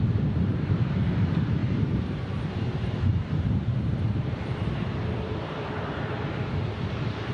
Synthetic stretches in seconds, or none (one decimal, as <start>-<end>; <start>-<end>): 0.0-7.3